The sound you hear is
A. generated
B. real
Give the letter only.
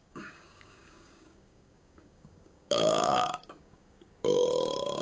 A